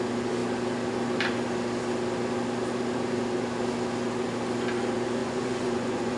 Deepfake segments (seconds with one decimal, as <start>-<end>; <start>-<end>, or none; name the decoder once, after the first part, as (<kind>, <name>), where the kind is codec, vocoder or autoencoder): 5.2-6.2 (vocoder, Vocos)